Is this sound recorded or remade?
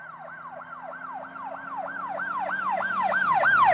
recorded